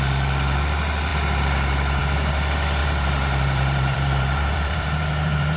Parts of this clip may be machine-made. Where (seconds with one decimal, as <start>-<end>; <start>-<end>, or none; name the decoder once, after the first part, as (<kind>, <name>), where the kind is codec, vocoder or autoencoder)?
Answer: 2.8-5.6 (vocoder, BigVGAN v2)